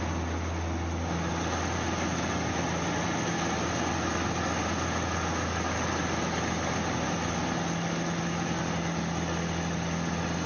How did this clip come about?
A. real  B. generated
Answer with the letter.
A